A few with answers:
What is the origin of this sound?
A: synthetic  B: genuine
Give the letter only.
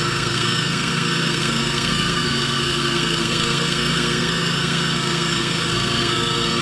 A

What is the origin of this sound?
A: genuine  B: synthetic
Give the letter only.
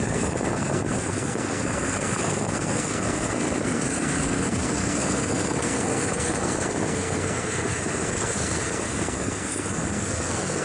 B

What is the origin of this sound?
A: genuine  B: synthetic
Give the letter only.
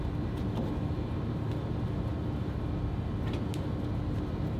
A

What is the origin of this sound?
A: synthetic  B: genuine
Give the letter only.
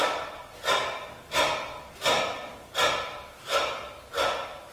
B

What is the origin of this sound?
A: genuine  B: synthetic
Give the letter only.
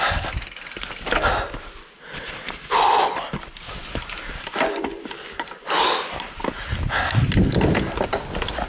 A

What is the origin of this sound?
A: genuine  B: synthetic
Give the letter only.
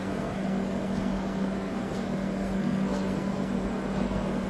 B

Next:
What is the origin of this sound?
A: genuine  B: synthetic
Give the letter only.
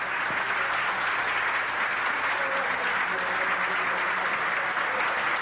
A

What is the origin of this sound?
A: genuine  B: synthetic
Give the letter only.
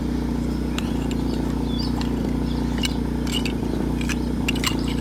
A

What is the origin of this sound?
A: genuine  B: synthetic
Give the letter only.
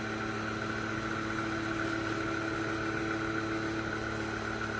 A